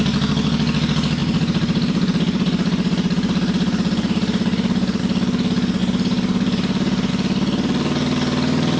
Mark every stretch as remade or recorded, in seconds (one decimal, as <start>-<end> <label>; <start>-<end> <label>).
0.0-1.2 recorded; 1.2-5.0 remade; 5.0-5.8 recorded; 5.8-7.1 remade; 7.1-8.8 recorded